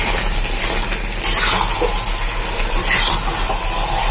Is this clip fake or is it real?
real